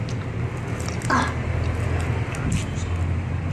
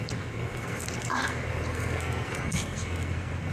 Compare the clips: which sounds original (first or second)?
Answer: first